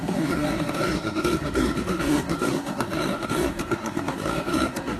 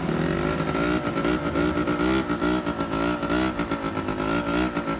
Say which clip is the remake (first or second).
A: first